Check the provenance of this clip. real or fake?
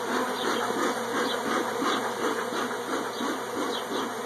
real